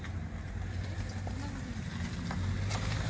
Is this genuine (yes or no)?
yes